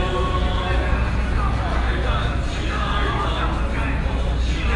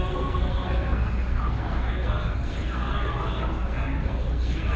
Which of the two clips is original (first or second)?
first